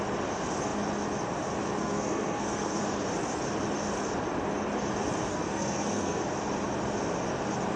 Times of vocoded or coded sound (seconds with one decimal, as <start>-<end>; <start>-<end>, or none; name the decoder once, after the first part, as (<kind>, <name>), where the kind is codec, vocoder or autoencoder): 1.8-2.8 (codec, SNAC); 5.3-6.2